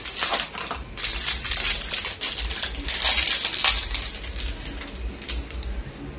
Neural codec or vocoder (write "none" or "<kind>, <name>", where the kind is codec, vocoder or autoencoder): none